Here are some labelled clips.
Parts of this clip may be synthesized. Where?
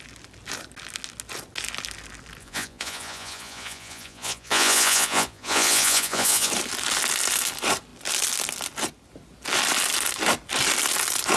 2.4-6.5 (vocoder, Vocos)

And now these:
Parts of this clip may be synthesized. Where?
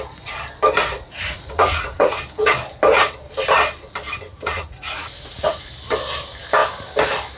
0.8-2.2 (vocoder, Vocos); 4.3-5.7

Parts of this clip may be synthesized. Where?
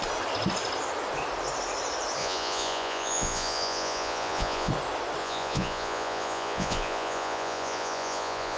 2.2-4.7 (vocoder, Vocos); 5.2-8.6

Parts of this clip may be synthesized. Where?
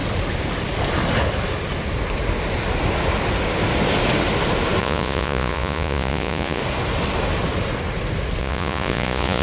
4.8-6.6 (vocoder, Vocos); 8.4-9.4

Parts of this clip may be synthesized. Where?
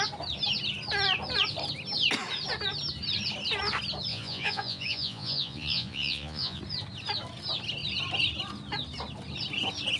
4.1-6.6 (vocoder, Vocos)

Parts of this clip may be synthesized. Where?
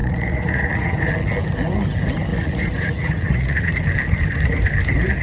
0.0-1.1 (vocoder, Vocos); 2.3-3.7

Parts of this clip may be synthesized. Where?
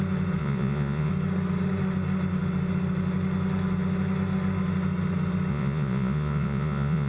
0.4-1.1 (vocoder, Vocos); 5.5-7.1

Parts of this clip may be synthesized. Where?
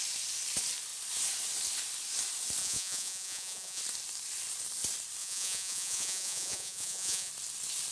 2.6-3.8 (vocoder, Vocos); 5.2-7.3